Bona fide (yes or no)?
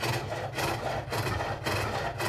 yes